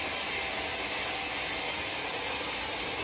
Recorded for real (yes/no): yes